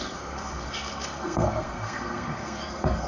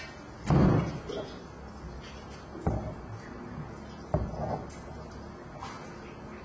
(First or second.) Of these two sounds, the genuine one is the second